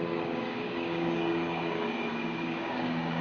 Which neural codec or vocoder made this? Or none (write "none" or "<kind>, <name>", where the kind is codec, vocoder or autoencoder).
codec, DAC